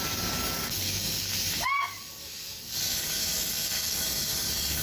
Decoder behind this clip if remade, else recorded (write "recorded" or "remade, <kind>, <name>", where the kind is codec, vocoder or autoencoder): remade, codec, DAC